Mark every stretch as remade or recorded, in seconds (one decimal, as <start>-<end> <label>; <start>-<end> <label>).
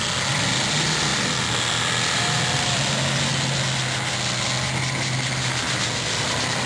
0.0-6.7 recorded